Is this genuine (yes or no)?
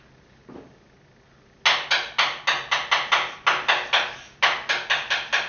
yes